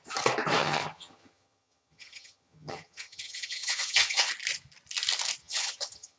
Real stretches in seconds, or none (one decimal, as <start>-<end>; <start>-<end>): 0.0-0.6; 4.3-5.4

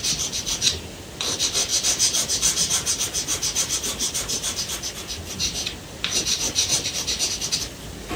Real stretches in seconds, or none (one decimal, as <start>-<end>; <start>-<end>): 0.0-1.7; 4.6-6.6; 7.3-8.2

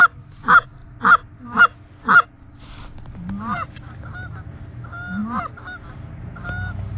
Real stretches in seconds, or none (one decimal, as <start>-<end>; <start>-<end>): 0.0-7.0

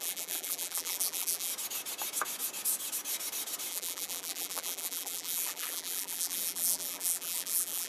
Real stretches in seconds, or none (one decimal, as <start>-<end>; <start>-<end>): 1.5-3.7